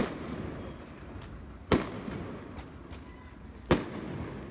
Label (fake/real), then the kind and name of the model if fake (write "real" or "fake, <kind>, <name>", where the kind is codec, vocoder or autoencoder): real